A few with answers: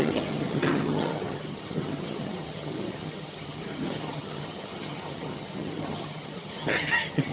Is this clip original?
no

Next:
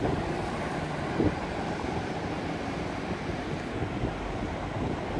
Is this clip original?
yes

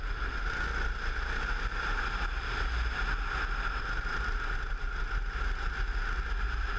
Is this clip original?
yes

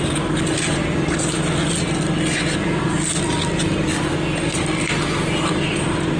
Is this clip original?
yes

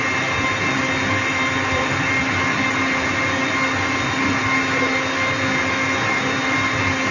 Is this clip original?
yes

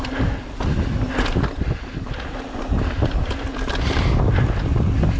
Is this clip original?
yes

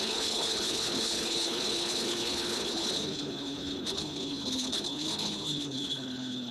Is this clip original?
no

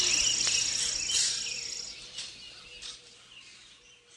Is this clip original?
yes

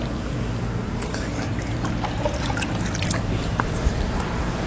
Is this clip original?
yes